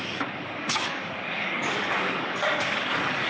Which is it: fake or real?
fake